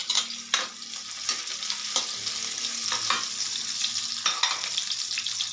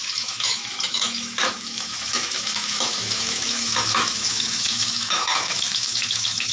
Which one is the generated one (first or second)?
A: second